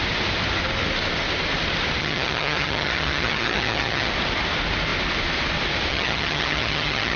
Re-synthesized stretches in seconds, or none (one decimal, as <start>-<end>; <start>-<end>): 2.0-4.1; 5.9-7.2